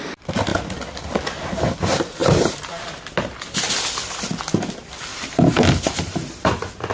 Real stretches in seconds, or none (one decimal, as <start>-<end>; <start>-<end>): 0.0-2.2; 3.0-5.1; 6.5-6.9